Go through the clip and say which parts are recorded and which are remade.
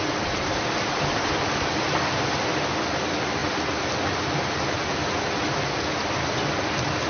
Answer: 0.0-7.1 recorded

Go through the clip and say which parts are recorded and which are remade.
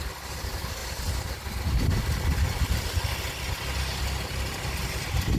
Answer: 0.0-5.4 recorded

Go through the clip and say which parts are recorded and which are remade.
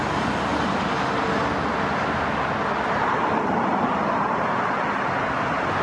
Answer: 0.0-5.8 recorded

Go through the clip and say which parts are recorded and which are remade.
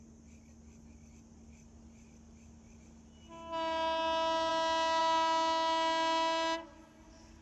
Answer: 0.0-7.4 recorded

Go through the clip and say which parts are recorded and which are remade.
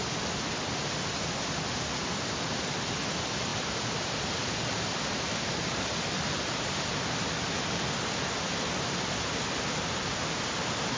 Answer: 0.0-3.5 recorded; 3.5-7.0 remade; 7.0-11.0 recorded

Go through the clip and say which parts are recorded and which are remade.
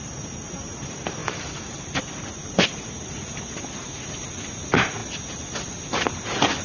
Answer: 0.0-1.2 recorded; 1.2-2.0 remade; 2.0-6.6 recorded